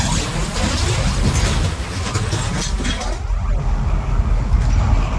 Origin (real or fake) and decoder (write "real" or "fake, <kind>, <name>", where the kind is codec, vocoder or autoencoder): real